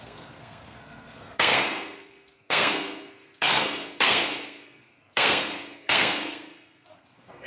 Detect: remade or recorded remade